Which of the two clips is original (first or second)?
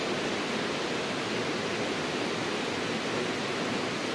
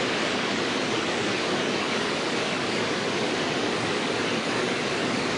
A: first